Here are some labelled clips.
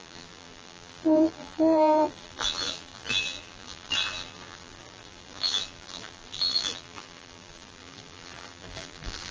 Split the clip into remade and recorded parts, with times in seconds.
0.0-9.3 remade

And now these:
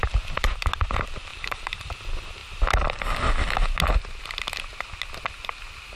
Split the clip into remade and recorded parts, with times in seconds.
0.0-1.3 recorded; 1.3-1.9 remade; 1.9-6.0 recorded

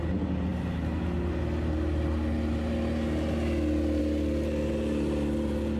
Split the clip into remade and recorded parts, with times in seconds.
0.0-5.8 recorded